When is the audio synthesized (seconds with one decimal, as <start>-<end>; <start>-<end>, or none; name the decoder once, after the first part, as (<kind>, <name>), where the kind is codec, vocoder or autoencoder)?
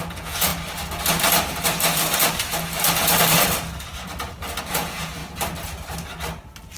0.0-0.5 (vocoder, Vocos); 4.6-5.2